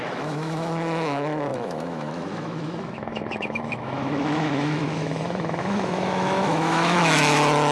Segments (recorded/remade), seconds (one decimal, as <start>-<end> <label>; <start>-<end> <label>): 0.0-7.7 remade